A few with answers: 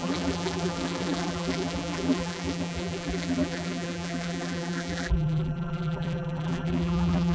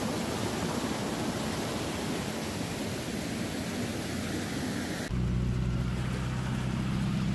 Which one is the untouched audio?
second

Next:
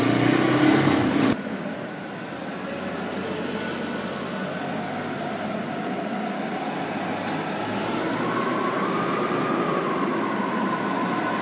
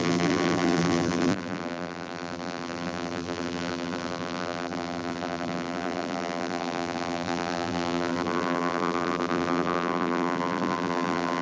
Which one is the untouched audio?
first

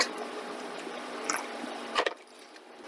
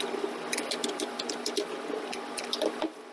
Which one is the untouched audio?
second